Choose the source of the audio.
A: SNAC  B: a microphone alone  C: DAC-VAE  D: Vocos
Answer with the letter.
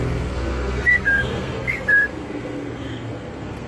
A